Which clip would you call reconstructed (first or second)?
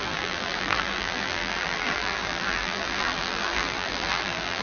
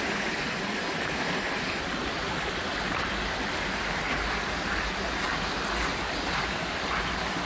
first